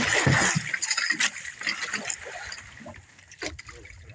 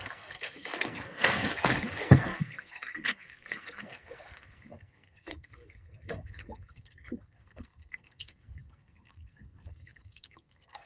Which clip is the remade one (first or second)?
second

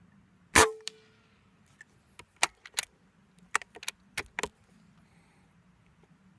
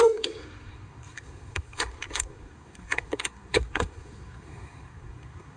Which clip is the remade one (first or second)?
second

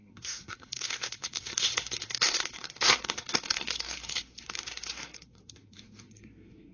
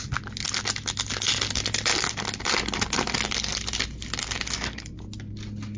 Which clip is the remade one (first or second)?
first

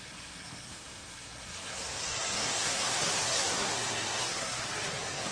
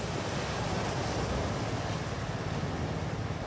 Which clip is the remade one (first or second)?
first